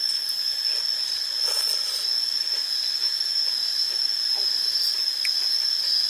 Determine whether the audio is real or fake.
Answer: real